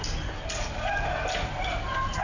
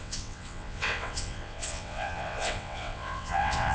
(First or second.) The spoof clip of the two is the second